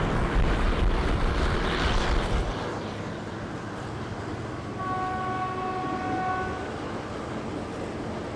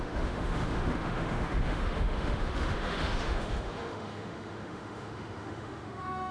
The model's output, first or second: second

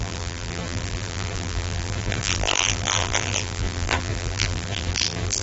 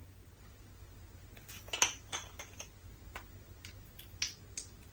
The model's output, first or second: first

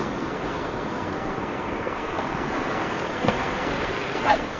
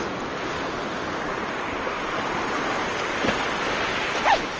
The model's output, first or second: first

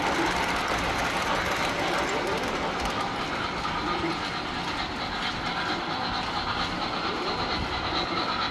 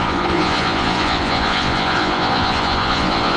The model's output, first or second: second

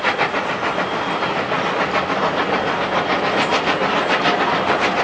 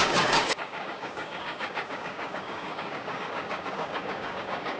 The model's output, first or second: second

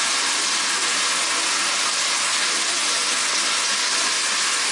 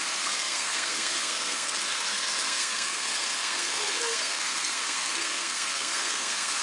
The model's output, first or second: second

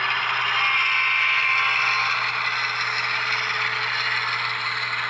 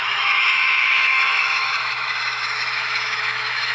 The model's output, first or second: second